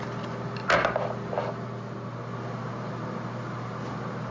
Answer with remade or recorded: recorded